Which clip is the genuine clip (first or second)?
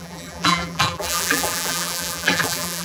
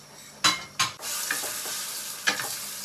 second